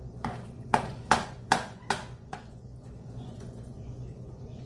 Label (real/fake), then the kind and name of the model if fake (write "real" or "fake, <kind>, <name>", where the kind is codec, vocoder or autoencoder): fake, vocoder, Vocos